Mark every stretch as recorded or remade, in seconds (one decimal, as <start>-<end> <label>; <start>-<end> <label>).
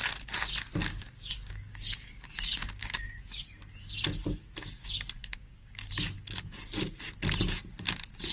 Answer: 0.0-0.9 recorded; 0.9-3.4 remade; 3.4-5.2 recorded; 5.2-5.9 remade; 5.9-8.3 recorded